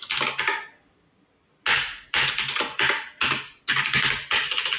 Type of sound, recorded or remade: recorded